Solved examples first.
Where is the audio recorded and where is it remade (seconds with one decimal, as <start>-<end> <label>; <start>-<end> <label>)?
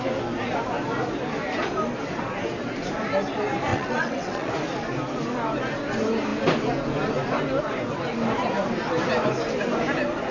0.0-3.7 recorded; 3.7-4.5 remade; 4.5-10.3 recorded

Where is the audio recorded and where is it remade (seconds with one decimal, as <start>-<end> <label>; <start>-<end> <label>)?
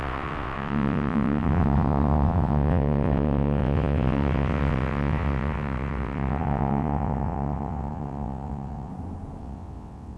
0.0-8.9 remade; 8.9-9.4 recorded; 9.4-10.2 remade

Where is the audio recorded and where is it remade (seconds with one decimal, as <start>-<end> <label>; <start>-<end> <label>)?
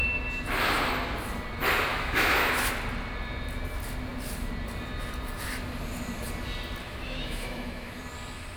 0.0-1.9 recorded; 1.9-2.7 remade; 2.7-6.8 recorded; 6.8-8.0 remade; 8.0-8.6 recorded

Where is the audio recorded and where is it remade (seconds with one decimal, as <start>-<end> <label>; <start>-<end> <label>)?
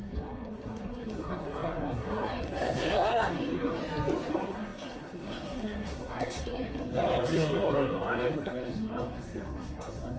0.0-3.8 remade; 3.8-4.3 recorded; 4.3-10.2 remade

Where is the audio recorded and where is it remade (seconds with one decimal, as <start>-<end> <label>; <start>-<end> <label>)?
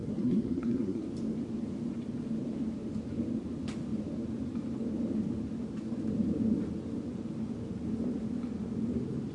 0.0-1.0 remade; 1.0-9.3 recorded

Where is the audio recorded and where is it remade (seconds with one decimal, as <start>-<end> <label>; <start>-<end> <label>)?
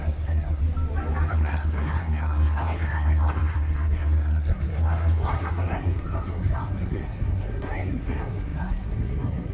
0.0-0.6 remade; 0.6-1.3 recorded; 1.3-9.5 remade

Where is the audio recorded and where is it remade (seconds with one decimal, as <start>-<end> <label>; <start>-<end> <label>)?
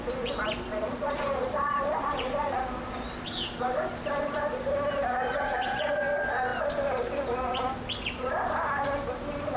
0.0-0.8 recorded; 0.8-2.6 remade; 2.6-5.3 recorded; 5.3-6.0 remade; 6.0-9.6 recorded